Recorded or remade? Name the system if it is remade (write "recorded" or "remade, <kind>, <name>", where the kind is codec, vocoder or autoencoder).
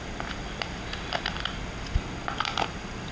recorded